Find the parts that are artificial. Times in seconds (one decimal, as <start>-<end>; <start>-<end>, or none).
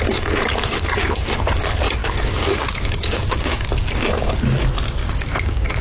1.0-1.5; 2.0-3.7; 5.0-5.8